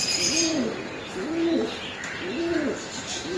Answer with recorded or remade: recorded